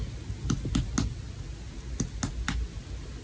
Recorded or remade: recorded